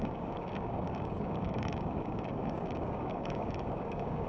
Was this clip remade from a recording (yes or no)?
yes